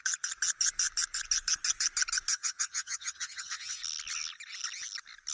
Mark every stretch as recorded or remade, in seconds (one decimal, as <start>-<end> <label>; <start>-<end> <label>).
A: 0.0-2.3 recorded; 2.3-3.8 remade; 3.8-5.3 recorded